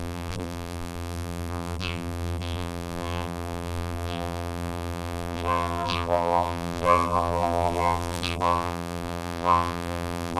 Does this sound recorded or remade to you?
remade